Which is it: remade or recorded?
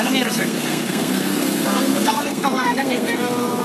remade